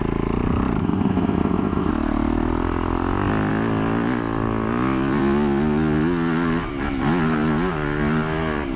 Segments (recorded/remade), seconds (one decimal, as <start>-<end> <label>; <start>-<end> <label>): 0.0-0.8 recorded; 0.8-1.9 remade; 1.9-8.8 recorded